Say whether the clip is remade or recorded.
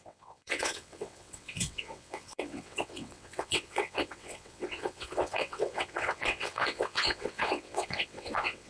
remade